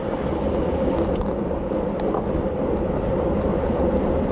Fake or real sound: real